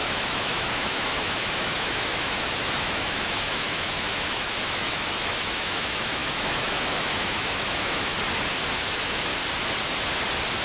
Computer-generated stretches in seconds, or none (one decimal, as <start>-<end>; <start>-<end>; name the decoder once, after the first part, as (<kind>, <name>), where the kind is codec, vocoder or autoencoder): 0.0-8.1 (autoencoder, DAC-VAE); 8.7-9.3